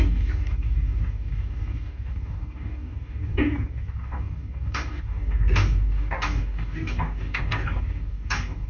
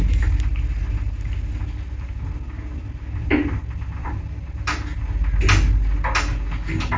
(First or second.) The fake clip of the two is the first